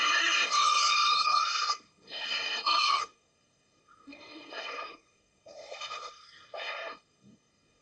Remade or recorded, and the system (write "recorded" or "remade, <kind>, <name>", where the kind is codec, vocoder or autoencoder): remade, codec, SNAC